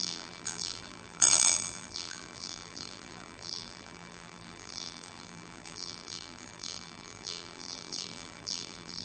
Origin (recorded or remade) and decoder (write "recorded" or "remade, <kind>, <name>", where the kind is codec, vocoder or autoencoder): remade, vocoder, BigVGAN v2